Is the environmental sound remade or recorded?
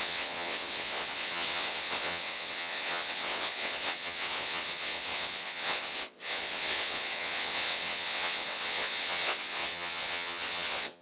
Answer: remade